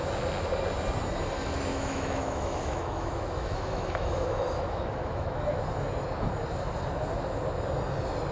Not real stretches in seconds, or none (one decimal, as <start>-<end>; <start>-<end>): 1.7-5.6

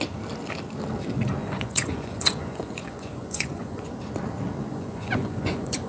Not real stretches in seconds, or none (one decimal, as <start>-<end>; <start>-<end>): 1.4-3.9; 4.7-5.9

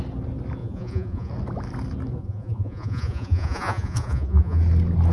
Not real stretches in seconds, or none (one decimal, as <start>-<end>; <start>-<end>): 0.6-1.3; 2.2-4.6